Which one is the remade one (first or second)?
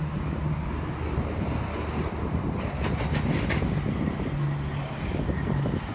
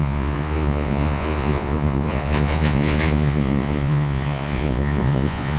second